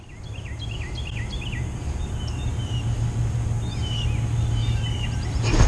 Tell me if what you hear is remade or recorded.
recorded